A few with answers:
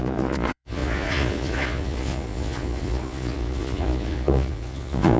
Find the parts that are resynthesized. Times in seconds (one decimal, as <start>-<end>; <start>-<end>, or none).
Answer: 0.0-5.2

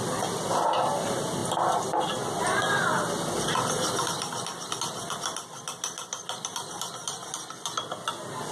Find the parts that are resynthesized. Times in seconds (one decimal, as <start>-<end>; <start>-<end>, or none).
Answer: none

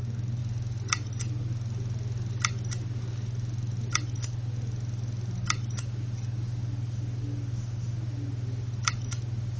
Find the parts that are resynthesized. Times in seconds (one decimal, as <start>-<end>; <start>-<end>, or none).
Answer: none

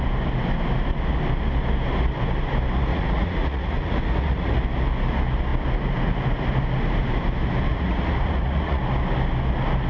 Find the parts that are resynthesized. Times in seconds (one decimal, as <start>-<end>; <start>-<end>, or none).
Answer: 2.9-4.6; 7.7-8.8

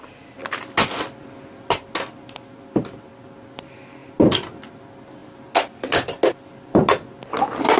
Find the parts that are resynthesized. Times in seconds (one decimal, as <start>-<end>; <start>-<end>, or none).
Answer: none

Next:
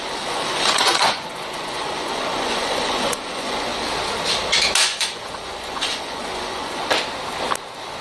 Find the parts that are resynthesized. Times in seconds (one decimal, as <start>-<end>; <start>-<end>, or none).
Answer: 0.0-3.7; 4.8-6.8

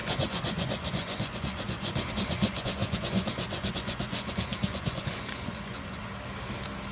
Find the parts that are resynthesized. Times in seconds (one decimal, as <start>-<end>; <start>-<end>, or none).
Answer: 0.0-6.1